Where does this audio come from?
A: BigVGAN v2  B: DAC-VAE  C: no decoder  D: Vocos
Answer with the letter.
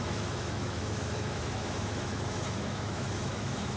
B